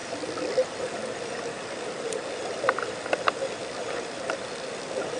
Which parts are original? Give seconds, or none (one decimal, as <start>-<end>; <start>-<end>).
0.0-5.2